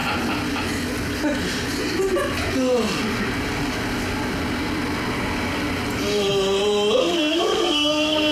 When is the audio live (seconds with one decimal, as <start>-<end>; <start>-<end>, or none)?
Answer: 0.0-7.0